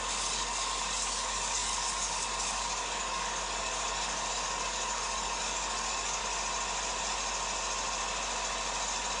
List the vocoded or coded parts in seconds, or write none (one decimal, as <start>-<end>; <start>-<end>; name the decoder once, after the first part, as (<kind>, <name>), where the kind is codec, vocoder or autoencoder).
0.0-6.2 (codec, DAC)